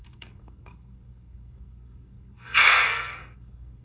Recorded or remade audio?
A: remade